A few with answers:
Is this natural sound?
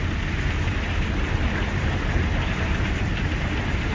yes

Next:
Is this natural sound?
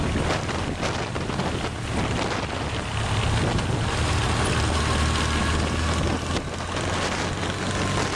yes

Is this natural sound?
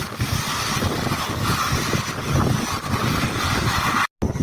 yes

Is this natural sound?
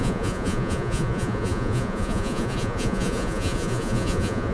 no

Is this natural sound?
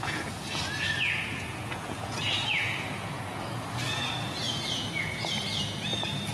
no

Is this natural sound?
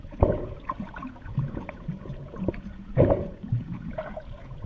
no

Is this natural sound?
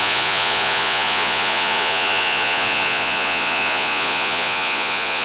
no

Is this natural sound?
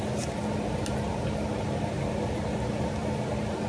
yes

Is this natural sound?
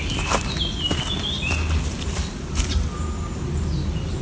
yes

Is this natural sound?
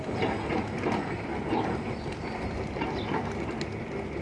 yes